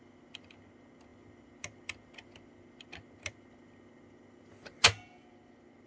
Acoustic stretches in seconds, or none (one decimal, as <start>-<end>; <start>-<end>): 0.0-5.9